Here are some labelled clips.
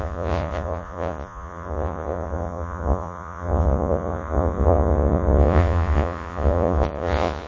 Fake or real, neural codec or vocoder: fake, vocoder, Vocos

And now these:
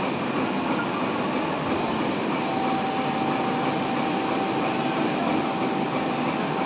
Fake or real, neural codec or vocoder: real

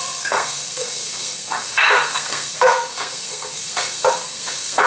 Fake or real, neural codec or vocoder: fake, codec, SNAC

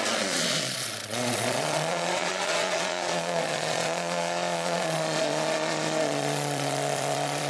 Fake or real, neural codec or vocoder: fake, vocoder, Vocos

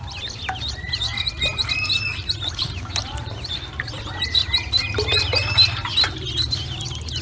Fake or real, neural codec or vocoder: fake, vocoder, BigVGAN v2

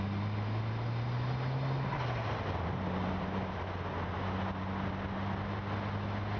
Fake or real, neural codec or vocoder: real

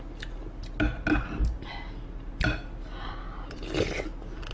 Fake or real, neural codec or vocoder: real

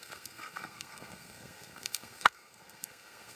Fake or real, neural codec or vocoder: fake, codec, SNAC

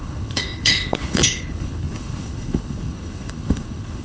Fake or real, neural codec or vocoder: fake, codec, HILCodec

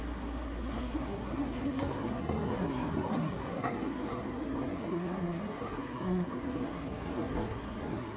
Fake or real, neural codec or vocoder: fake, codec, SNAC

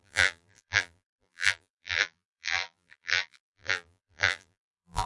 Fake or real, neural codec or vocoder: fake, vocoder, BigVGAN v2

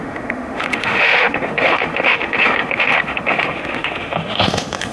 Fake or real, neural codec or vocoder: fake, autoencoder, DAC-VAE